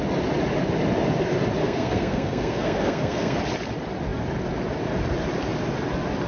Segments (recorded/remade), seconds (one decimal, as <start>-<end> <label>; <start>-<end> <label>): 0.0-1.6 recorded; 1.6-3.4 remade; 3.4-6.3 recorded